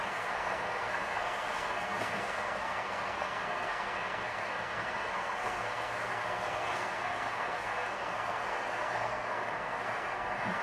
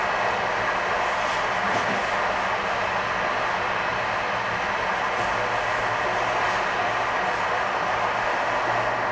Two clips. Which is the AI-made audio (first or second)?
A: first